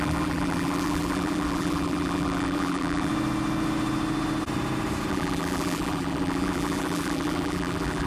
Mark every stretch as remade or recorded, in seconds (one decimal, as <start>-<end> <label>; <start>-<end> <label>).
0.0-3.1 remade; 3.1-5.1 recorded; 5.1-8.1 remade